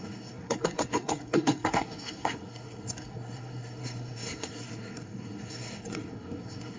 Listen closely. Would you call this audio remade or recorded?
remade